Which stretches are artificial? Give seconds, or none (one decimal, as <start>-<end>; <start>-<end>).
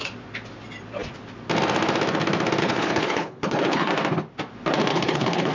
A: 2.6-3.9; 4.9-5.5